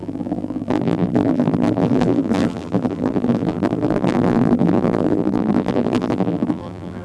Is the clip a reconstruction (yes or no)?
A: yes